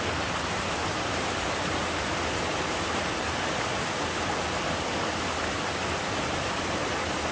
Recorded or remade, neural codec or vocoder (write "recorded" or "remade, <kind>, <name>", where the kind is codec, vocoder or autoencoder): recorded